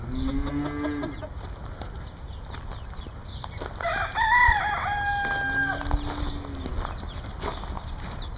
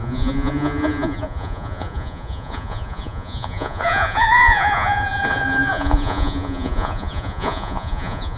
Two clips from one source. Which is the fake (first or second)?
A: second